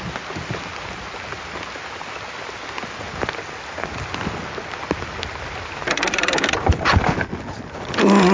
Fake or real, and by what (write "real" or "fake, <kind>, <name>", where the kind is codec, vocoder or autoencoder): real